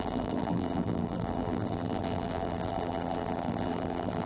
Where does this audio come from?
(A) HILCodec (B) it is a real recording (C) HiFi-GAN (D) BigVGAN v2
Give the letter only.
D